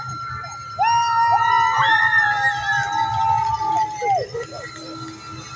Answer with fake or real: real